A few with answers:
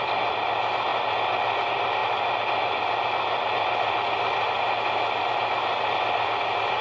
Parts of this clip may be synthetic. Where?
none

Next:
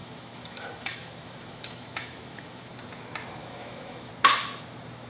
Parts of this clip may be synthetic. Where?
0.0-2.7 (autoencoder, DAC-VAE); 3.4-4.1